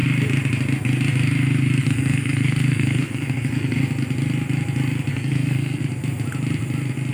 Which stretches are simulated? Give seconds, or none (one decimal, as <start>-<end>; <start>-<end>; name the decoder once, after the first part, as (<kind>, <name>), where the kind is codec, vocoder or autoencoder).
1.8-3.8 (codec, SNAC); 5.1-5.8